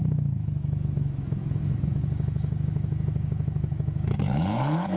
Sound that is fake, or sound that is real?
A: fake